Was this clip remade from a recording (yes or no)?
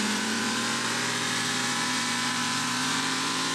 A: yes